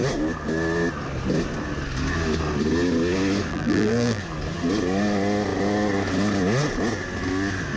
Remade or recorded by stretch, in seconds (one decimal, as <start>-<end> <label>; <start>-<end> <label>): 0.0-3.5 recorded; 3.5-4.2 remade; 4.2-7.8 recorded

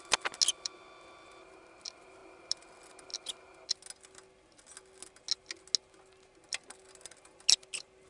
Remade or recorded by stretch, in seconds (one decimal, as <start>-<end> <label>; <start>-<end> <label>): 0.0-8.1 recorded

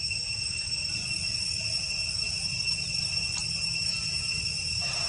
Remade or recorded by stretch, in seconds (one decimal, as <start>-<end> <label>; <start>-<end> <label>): 0.0-3.4 recorded; 3.4-5.1 remade